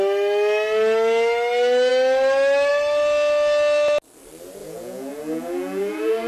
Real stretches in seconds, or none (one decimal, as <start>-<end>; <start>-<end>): 0.0-4.6